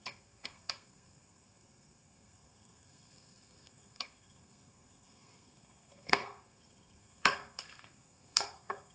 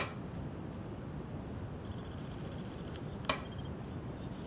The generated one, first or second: first